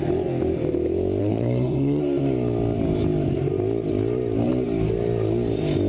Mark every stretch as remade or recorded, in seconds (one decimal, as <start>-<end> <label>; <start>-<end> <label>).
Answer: 0.0-1.2 recorded; 1.2-2.0 remade; 2.0-5.9 recorded